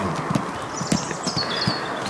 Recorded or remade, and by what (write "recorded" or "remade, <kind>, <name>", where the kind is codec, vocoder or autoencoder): recorded